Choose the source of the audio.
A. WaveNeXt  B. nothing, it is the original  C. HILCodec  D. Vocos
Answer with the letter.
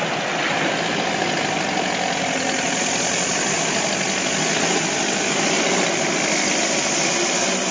B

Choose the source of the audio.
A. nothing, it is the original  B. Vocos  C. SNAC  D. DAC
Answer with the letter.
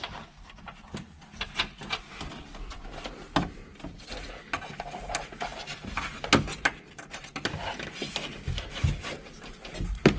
A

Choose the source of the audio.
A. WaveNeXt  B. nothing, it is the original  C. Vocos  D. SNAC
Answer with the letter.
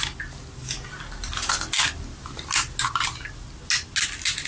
B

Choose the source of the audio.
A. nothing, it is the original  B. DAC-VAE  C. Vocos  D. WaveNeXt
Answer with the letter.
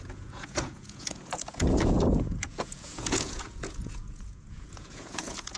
C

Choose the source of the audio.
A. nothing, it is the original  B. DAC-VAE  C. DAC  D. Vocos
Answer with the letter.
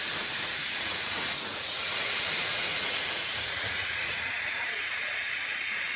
D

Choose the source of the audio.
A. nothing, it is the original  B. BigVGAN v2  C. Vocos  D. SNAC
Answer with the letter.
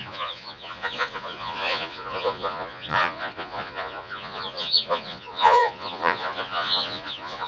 C